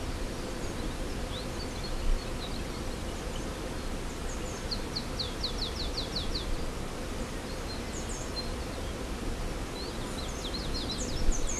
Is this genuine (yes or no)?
yes